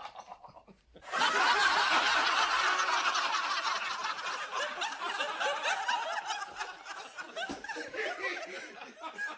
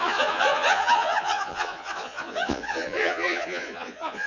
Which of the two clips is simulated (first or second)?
second